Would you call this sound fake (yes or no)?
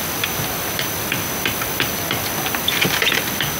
no